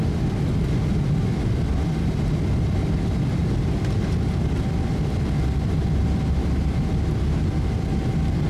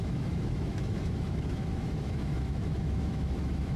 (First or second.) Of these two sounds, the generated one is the second